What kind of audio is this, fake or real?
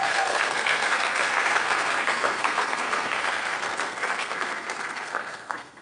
fake